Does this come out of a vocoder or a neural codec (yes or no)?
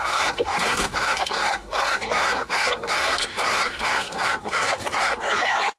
yes